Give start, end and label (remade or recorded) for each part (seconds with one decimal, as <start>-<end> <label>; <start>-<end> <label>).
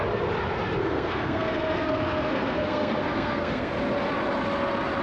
0.0-0.8 recorded; 0.8-3.7 remade; 3.7-5.0 recorded